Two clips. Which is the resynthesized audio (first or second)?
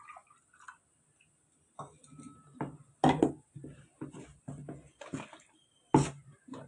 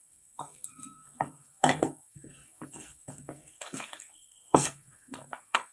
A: second